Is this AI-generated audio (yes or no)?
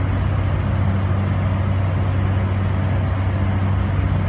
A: no